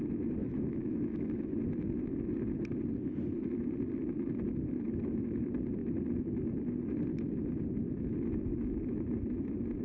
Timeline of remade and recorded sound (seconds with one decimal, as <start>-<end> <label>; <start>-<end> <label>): 0.0-0.4 recorded; 0.4-1.5 remade; 1.5-9.8 recorded